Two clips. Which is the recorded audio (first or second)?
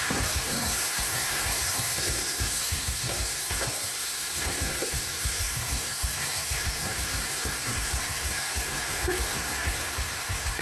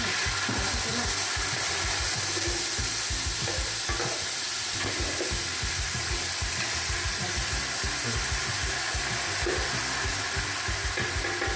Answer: second